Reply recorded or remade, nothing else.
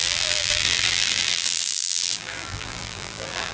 remade